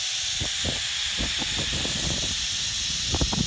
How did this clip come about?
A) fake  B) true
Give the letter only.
B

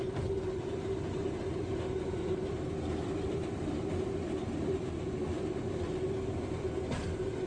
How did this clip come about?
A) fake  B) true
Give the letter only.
A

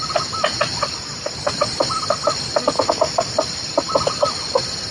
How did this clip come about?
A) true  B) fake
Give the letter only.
A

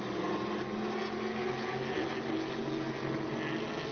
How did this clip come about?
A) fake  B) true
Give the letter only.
B